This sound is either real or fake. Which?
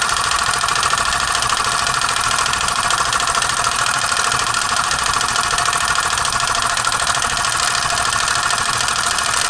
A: real